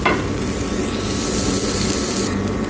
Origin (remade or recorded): recorded